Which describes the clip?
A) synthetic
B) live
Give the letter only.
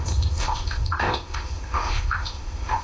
A